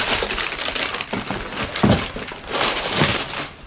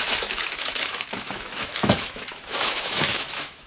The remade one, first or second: second